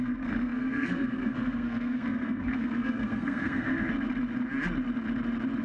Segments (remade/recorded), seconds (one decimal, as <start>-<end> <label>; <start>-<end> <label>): 0.0-3.9 remade; 3.9-5.6 recorded